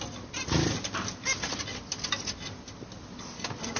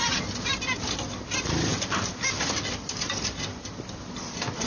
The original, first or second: first